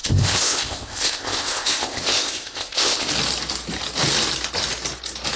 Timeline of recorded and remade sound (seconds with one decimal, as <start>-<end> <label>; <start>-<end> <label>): 0.0-3.1 remade; 3.1-5.4 recorded